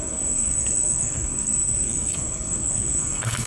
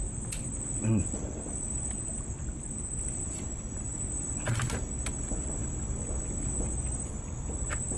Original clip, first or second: second